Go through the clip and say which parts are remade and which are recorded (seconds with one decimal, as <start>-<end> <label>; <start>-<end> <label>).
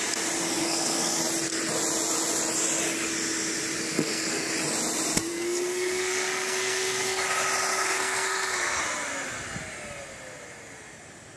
0.0-0.6 recorded; 0.6-1.2 remade; 1.2-3.9 recorded; 3.9-4.5 remade; 4.5-5.3 recorded; 5.3-7.2 remade; 7.2-7.7 recorded; 7.7-8.8 remade; 8.8-11.4 recorded